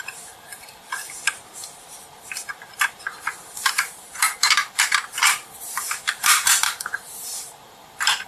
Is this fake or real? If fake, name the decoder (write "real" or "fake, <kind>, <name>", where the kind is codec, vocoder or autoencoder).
fake, vocoder, BigVGAN v2